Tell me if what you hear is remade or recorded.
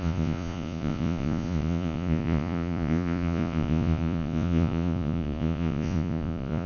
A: remade